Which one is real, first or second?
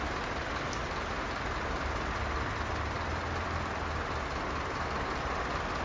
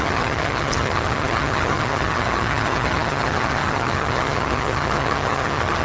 first